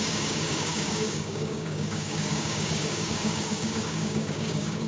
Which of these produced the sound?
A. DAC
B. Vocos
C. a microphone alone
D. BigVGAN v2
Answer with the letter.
A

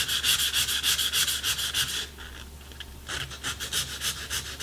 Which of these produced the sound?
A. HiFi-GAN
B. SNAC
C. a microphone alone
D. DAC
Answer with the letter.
C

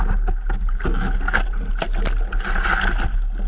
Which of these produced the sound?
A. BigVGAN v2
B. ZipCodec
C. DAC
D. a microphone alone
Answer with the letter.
D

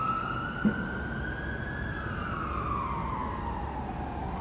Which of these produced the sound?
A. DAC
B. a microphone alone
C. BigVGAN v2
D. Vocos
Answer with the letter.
B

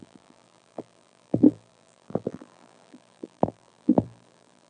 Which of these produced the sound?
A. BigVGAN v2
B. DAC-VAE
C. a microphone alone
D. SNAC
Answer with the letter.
A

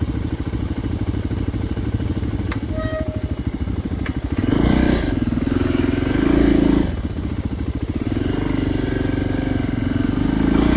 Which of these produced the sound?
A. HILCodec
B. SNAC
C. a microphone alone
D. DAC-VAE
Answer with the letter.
C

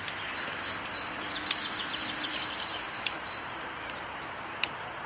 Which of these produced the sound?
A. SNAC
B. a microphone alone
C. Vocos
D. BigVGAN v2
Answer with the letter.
D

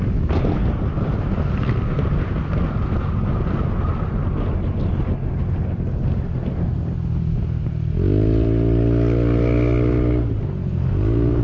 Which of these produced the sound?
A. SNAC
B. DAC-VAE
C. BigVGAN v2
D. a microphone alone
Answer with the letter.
D